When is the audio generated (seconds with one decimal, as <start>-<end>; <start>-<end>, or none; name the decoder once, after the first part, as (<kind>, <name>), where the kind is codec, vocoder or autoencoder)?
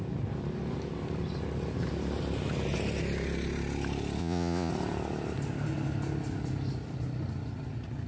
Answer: 4.2-4.7 (vocoder, Vocos)